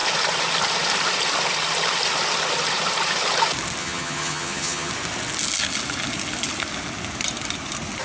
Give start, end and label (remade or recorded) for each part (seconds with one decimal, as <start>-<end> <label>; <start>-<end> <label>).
0.0-3.8 recorded; 3.8-4.9 remade; 4.9-8.0 recorded

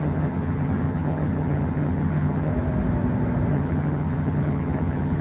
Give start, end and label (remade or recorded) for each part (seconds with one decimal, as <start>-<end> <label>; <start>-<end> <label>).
0.0-2.5 remade; 2.5-3.5 recorded; 3.5-5.2 remade

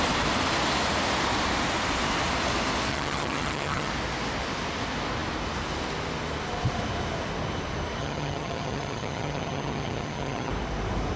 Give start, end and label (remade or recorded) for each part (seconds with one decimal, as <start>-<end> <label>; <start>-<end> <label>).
0.0-2.9 recorded; 2.9-3.9 remade; 3.9-8.0 recorded; 8.0-10.5 remade; 10.5-11.2 recorded

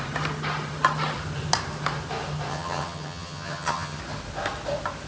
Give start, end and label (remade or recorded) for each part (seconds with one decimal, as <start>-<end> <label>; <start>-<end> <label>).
0.0-2.5 recorded; 2.5-4.0 remade; 4.0-5.1 recorded

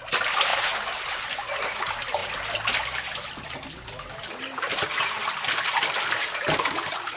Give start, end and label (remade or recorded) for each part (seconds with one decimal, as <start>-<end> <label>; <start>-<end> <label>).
0.0-7.2 recorded

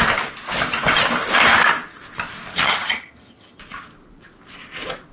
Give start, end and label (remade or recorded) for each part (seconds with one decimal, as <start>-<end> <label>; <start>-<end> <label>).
0.0-2.5 recorded; 2.5-3.6 remade; 3.6-5.1 recorded

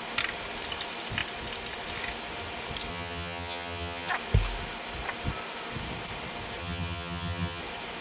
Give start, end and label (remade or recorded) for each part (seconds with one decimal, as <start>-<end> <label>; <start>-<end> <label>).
0.0-2.9 recorded; 2.9-4.1 remade; 4.1-6.6 recorded; 6.6-7.6 remade; 7.6-8.0 recorded